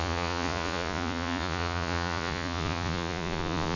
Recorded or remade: remade